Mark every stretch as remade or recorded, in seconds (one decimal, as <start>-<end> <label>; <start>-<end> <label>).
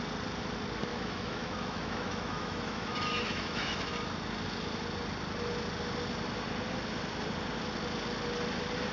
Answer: 0.0-0.9 recorded; 0.9-3.9 remade; 3.9-8.9 recorded